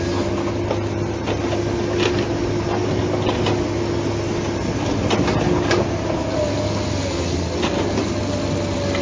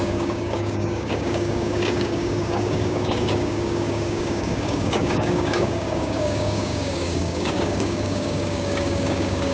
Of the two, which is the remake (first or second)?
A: second